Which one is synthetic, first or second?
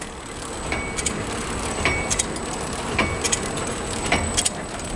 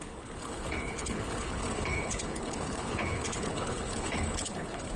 second